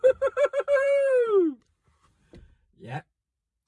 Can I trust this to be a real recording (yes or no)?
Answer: no